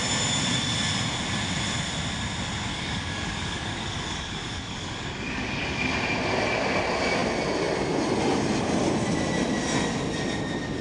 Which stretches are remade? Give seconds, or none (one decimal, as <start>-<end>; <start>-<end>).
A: 2.7-5.9